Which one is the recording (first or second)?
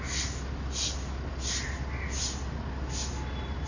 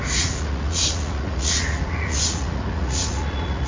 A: first